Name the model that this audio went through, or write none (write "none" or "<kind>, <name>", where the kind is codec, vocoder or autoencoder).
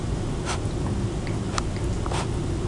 none